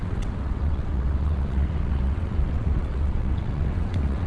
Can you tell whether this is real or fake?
fake